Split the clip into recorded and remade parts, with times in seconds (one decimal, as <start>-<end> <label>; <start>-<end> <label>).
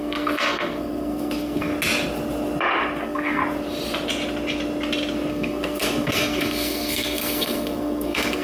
0.0-1.7 remade; 1.7-3.0 recorded; 3.0-3.4 remade; 3.4-5.3 recorded; 5.3-8.4 remade